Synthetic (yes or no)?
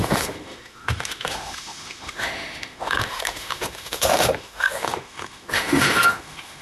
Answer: yes